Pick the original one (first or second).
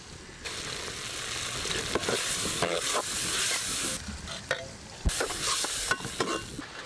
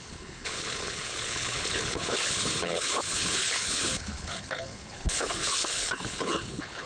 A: first